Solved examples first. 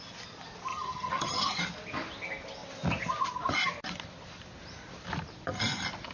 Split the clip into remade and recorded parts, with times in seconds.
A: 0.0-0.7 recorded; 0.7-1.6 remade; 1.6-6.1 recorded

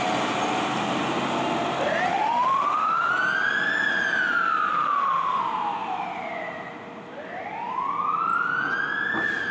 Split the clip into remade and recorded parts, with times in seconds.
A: 0.0-2.1 recorded; 2.1-3.1 remade; 3.1-4.7 recorded; 4.7-5.4 remade; 5.4-9.5 recorded

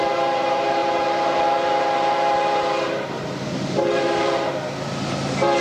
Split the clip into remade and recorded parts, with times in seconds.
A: 0.0-4.5 remade; 4.5-5.6 recorded

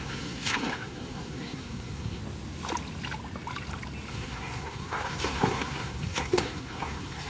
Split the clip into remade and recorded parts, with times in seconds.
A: 0.0-2.2 remade; 2.2-4.1 recorded; 4.1-7.3 remade

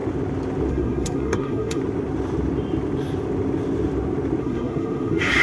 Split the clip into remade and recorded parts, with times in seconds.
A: 0.0-0.7 recorded; 0.7-1.8 remade; 1.8-4.4 recorded; 4.4-5.4 remade

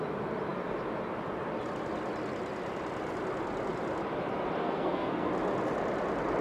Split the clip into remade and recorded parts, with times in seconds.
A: 0.0-4.6 recorded; 4.6-5.3 remade; 5.3-6.4 recorded